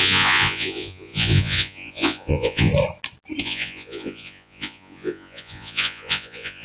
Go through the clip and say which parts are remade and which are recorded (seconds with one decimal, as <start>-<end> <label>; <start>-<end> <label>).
0.0-2.7 remade; 2.7-3.4 recorded; 3.4-6.6 remade